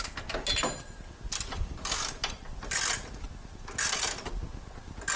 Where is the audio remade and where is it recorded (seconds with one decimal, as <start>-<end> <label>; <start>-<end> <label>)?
0.0-5.2 recorded

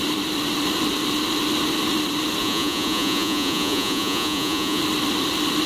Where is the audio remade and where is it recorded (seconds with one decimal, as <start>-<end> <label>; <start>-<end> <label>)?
0.0-2.4 recorded; 2.4-4.8 remade; 4.8-5.7 recorded